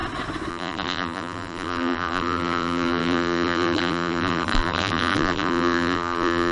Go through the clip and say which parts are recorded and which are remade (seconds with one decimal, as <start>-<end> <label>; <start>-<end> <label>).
0.0-0.5 recorded; 0.5-6.5 remade